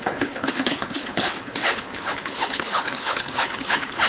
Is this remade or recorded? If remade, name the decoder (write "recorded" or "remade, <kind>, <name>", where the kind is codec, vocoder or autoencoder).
remade, codec, HILCodec